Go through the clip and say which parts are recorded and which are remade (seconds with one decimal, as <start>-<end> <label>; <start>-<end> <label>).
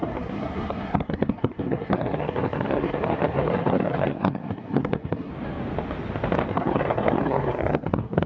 0.0-5.3 remade; 5.3-6.5 recorded; 6.5-8.3 remade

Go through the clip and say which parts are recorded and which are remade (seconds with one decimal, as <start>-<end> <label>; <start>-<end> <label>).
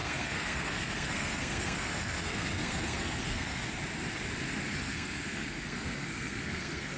0.0-3.6 remade; 3.6-4.8 recorded; 4.8-7.0 remade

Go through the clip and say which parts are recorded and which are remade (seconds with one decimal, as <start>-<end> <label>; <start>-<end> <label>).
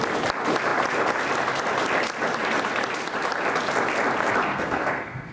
0.0-4.5 recorded; 4.5-5.3 remade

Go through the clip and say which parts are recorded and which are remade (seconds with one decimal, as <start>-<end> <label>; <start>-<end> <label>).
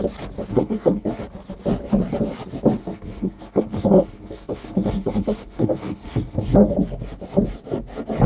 0.0-0.5 recorded; 0.5-1.2 remade; 1.2-2.8 recorded; 2.8-6.7 remade; 6.7-8.3 recorded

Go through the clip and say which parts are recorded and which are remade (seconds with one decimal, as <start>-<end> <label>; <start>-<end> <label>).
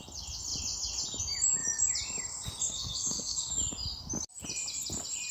0.0-2.6 recorded; 2.6-3.5 remade; 3.5-5.3 recorded